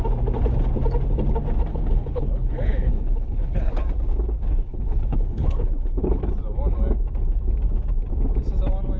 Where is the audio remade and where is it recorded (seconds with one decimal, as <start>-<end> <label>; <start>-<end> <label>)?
0.0-1.7 recorded; 1.7-3.7 remade; 3.7-4.7 recorded; 4.7-6.2 remade; 6.2-9.0 recorded